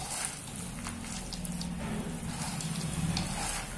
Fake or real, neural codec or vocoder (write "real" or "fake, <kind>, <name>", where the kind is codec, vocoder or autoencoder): real